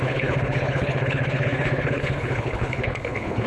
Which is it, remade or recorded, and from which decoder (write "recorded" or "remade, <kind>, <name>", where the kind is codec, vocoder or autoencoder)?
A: remade, codec, HILCodec